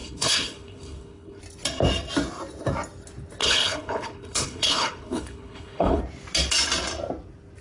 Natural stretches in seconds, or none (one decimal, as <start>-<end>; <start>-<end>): 1.4-3.4; 6.0-7.6